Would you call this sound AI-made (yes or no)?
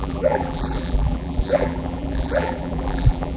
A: yes